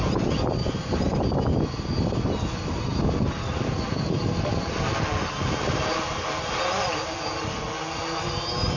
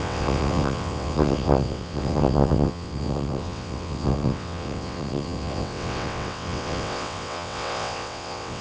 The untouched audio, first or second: first